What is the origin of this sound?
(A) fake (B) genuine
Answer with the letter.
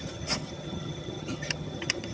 A